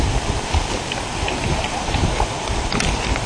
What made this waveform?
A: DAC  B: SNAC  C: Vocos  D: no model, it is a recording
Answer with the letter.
D